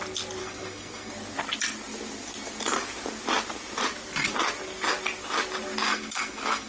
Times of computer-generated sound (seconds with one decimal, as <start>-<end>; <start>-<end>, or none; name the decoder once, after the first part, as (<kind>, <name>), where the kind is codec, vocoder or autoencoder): 0.4-1.1 (codec, SNAC); 5.9-6.7